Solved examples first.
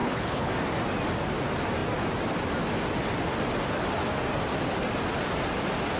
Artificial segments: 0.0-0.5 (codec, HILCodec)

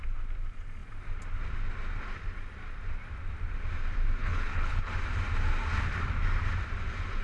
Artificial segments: 4.2-4.9 (codec, HILCodec)

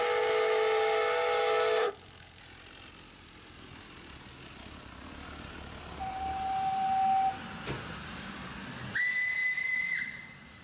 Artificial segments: 1.8-2.4 (codec, HILCodec)